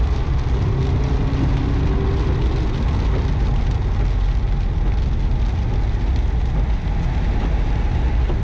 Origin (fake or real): real